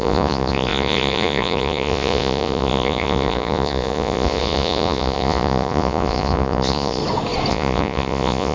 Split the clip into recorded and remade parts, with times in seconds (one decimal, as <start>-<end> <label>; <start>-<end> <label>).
0.0-7.0 remade; 7.0-7.5 recorded; 7.5-8.5 remade